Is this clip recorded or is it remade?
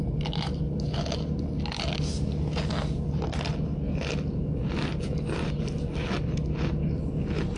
recorded